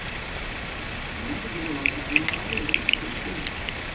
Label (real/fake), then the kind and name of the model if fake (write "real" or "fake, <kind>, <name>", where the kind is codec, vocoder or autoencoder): real